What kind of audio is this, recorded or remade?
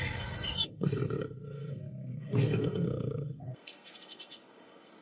remade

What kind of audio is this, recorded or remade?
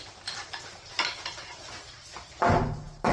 recorded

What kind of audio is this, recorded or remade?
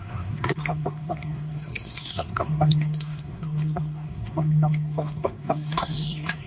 remade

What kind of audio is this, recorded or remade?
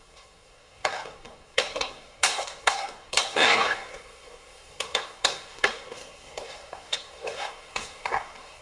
remade